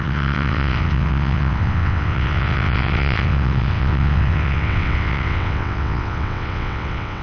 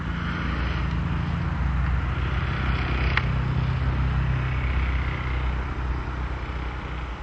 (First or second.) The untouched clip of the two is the second